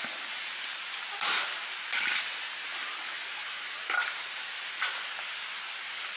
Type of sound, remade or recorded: recorded